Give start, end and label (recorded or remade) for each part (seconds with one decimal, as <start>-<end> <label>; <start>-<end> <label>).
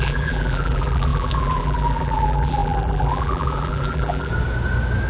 0.0-4.3 remade; 4.3-5.1 recorded